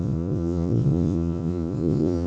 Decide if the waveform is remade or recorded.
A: remade